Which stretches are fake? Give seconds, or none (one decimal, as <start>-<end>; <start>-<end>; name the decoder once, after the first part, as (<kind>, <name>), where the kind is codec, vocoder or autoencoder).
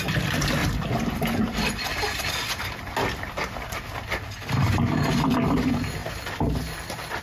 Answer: none